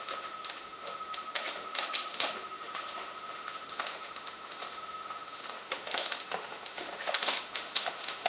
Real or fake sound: fake